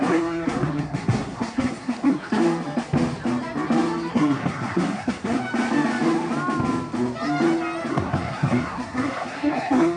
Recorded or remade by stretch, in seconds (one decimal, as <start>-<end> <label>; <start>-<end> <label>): 0.0-2.4 remade; 2.4-4.1 recorded; 4.1-5.4 remade; 5.4-7.9 recorded; 7.9-10.0 remade